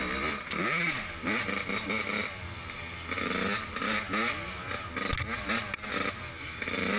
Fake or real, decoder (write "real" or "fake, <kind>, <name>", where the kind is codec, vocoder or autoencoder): real